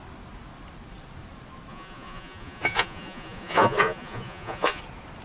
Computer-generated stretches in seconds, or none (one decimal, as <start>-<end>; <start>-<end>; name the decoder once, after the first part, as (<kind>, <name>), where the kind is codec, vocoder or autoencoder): 1.7-4.8 (vocoder, Vocos)